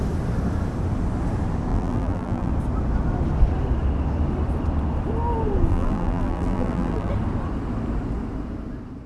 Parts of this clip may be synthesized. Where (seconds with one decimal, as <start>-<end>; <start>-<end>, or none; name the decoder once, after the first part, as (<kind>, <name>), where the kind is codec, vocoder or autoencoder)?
1.7-2.5 (vocoder, BigVGAN v2); 5.7-7.1